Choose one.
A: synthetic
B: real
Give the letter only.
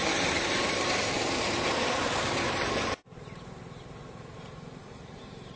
A